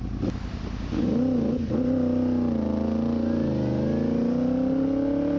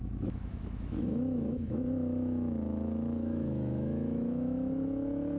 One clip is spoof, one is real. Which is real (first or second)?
first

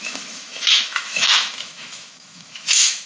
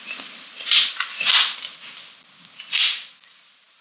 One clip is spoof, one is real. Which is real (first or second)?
second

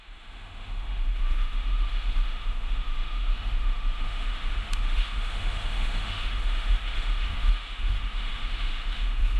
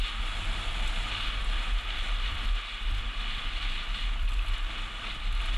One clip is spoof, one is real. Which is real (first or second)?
second